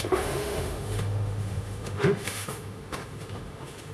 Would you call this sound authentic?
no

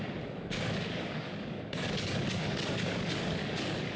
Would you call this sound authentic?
no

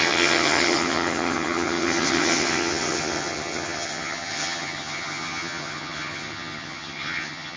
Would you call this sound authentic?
no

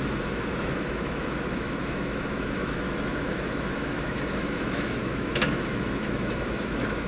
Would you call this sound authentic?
no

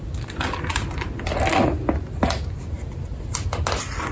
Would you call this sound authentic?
yes